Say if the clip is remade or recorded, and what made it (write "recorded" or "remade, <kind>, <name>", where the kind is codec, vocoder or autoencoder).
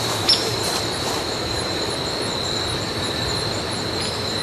remade, vocoder, BigVGAN v2